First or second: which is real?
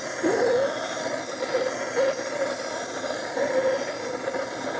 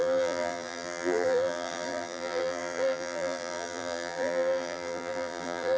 first